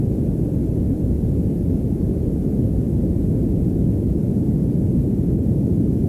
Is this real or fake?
real